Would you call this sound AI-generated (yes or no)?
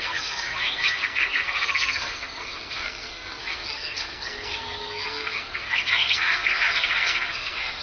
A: yes